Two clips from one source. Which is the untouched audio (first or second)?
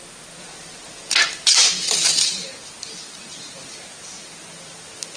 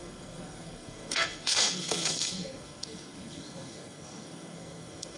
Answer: first